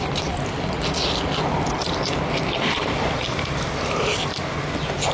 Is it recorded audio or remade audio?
recorded